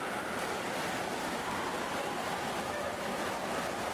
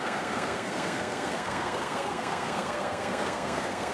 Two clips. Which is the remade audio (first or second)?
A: second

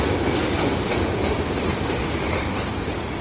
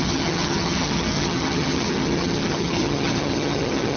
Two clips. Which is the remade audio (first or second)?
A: second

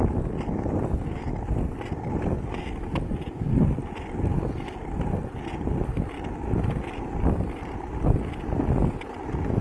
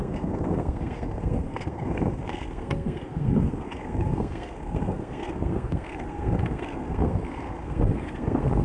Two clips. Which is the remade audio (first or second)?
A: second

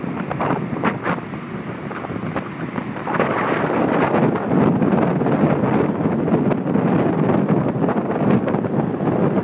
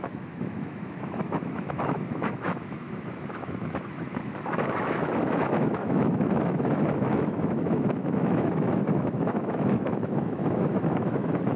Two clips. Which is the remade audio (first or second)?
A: second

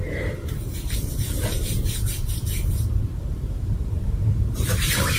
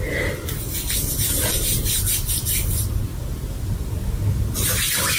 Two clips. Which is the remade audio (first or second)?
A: first